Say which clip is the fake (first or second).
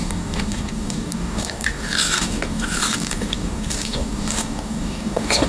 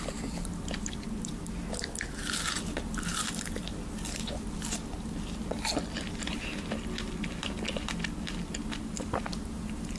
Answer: first